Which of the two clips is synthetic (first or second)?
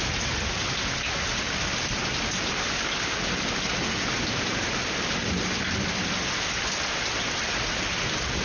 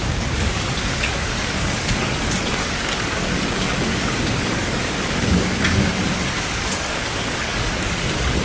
second